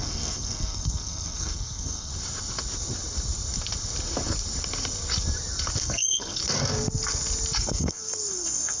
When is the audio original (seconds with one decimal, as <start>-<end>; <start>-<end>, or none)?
2.1-5.8; 6.4-7.6